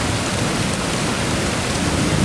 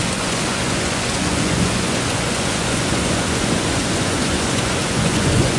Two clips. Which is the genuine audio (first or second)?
first